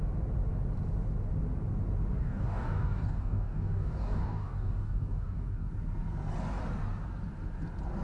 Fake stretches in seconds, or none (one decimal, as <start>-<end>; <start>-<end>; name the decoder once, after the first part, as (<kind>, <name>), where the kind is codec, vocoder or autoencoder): 2.2-5.7 (codec, DAC)